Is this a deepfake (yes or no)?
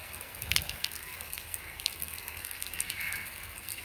yes